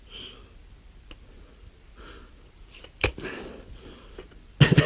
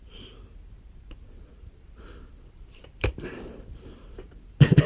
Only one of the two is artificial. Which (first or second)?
second